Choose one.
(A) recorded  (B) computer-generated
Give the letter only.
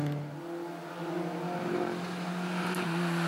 A